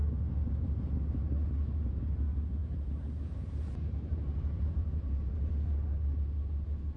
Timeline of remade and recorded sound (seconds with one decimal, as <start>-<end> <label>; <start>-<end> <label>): 0.0-2.6 recorded; 2.6-5.3 remade; 5.3-7.0 recorded